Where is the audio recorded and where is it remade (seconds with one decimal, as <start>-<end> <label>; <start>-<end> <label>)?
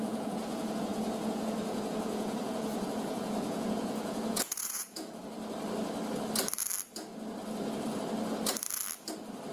0.0-5.2 remade; 5.2-9.5 recorded